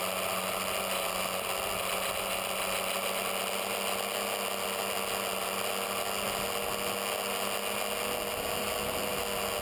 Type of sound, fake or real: real